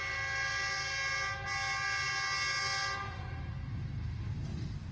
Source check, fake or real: real